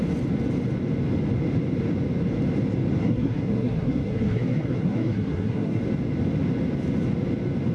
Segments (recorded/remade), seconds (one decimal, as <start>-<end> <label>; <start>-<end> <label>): 0.0-3.0 recorded; 3.0-5.8 remade; 5.8-7.7 recorded